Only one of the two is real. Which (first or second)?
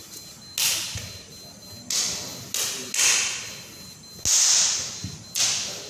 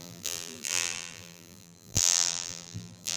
first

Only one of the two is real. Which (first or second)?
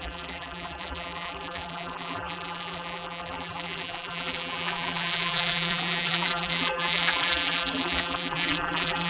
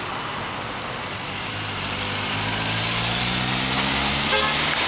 second